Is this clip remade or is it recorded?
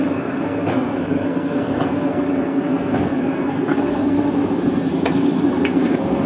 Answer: remade